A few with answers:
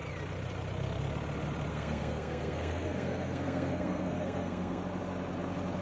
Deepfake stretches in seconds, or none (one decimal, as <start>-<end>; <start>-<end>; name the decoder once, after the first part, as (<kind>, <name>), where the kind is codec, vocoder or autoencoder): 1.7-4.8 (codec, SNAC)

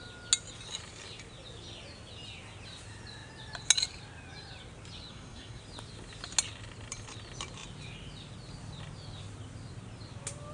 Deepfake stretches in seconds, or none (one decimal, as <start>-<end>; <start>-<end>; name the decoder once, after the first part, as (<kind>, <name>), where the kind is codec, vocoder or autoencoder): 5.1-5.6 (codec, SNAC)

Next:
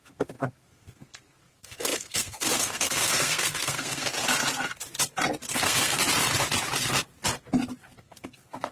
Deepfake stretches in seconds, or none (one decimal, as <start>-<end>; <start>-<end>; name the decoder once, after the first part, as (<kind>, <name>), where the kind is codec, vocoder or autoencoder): 0.0-4.1 (codec, SNAC); 5.5-6.0; 8.0-8.7

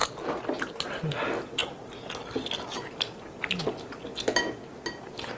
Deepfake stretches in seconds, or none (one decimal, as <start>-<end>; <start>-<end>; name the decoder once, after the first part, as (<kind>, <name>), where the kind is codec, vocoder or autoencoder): none

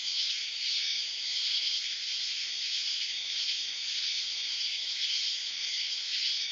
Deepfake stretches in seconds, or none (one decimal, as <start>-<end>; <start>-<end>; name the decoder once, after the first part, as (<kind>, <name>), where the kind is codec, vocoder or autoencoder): 0.0-6.5 (codec, SNAC)

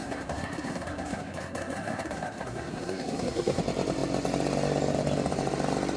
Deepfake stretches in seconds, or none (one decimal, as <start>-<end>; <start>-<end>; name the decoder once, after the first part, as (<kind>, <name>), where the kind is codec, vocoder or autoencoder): 0.0-3.6 (codec, SNAC)